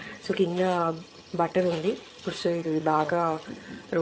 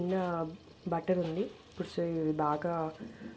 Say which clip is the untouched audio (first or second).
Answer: second